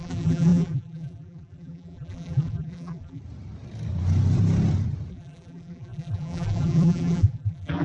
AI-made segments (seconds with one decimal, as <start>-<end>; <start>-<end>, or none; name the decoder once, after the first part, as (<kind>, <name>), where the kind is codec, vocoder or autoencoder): 0.0-3.2 (vocoder, BigVGAN v2); 5.1-7.8